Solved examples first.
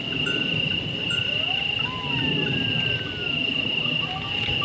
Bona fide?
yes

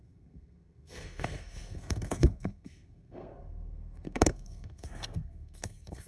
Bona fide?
no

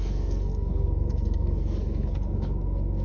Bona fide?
no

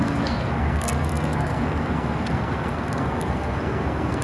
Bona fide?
no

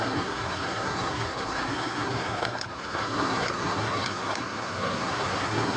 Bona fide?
no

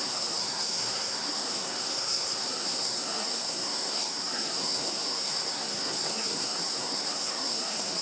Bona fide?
no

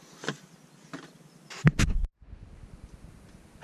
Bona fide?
yes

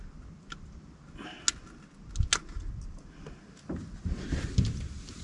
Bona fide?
yes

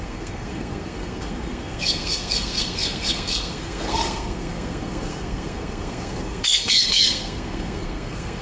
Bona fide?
no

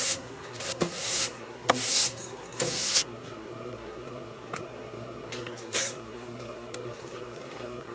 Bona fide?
no